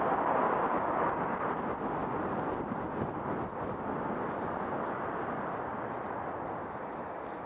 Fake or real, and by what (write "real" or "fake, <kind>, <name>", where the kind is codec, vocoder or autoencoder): real